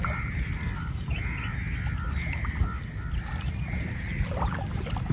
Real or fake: real